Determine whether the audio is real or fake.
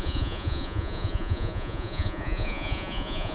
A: fake